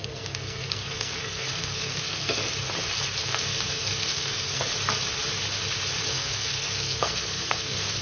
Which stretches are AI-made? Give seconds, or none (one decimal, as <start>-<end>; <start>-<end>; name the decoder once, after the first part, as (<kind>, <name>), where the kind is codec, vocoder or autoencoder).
0.0-2.4 (codec, SNAC); 3.2-4.7; 6.1-8.0